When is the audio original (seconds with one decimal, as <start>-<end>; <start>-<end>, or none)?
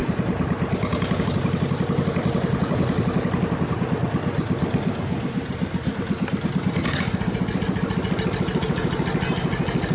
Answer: 0.0-9.9